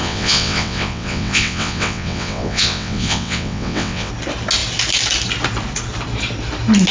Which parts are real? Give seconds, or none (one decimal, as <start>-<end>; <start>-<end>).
4.1-6.9